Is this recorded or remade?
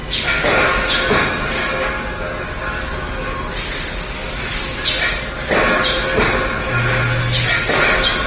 recorded